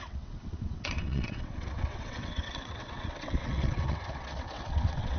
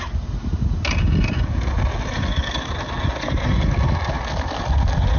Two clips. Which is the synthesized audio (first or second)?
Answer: first